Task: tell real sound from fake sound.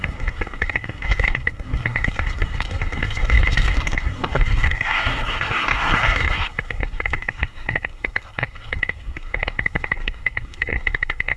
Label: fake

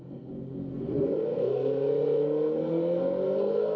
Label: fake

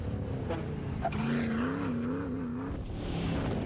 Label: real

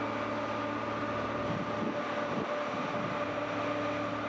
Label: real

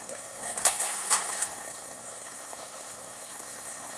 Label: fake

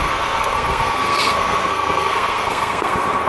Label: fake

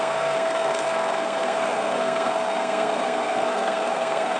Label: fake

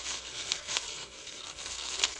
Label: fake